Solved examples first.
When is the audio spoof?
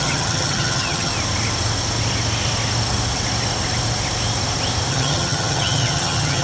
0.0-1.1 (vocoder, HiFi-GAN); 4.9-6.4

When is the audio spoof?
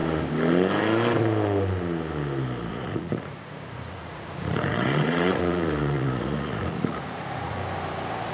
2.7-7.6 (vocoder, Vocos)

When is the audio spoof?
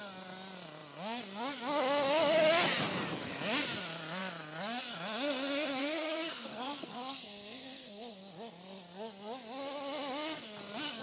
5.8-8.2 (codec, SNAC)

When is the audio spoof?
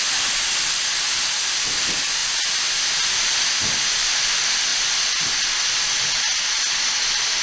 none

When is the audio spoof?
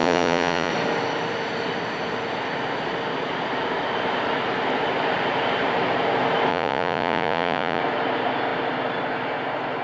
0.0-0.7 (vocoder, Vocos); 6.5-7.8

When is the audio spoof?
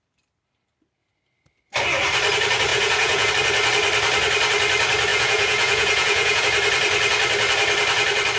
2.7-3.3 (vocoder, Vocos); 5.1-6.4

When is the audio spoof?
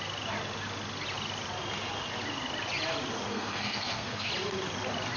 3.3-4.3 (codec, SNAC)